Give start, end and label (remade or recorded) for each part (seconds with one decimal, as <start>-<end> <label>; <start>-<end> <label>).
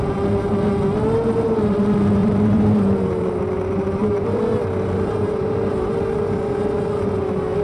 0.0-2.2 recorded; 2.2-3.4 remade; 3.4-4.0 recorded; 4.0-6.0 remade; 6.0-7.6 recorded